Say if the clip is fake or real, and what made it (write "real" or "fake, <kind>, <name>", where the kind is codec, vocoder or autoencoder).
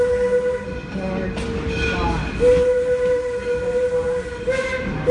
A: real